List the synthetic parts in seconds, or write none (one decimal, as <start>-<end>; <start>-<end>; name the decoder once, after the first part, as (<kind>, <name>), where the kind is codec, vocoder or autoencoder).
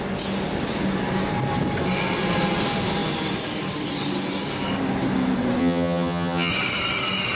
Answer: 5.6-6.5 (vocoder, HiFi-GAN)